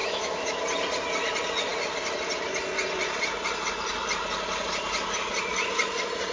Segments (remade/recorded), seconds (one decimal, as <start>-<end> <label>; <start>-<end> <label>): 0.0-0.6 remade; 0.6-6.3 recorded